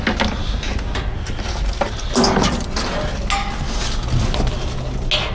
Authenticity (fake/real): real